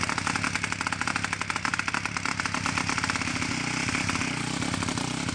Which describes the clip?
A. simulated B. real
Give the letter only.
B